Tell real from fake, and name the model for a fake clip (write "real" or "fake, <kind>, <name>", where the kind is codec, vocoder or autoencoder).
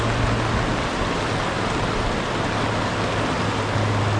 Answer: real